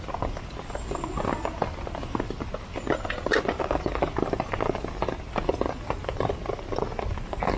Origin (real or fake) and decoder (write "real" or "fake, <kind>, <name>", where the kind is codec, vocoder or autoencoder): real